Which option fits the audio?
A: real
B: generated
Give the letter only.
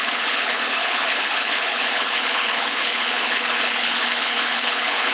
B